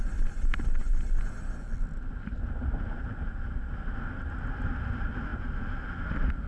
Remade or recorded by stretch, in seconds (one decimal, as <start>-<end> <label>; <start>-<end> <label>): 0.0-6.5 recorded